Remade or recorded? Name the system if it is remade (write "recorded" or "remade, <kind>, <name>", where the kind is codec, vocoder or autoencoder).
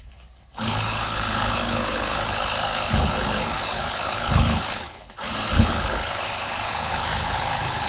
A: remade, codec, HILCodec